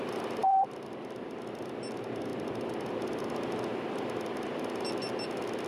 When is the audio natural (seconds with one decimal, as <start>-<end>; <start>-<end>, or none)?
0.0-0.4; 1.3-2.3; 2.9-3.7; 4.6-5.7